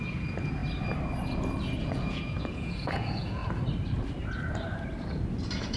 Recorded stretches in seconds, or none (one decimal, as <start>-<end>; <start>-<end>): 0.6-1.8; 3.4-5.8